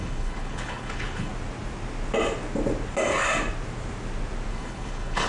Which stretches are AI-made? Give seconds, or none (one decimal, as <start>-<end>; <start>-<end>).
0.0-1.3; 4.5-5.3